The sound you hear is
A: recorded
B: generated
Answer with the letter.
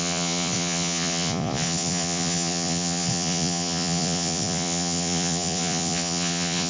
B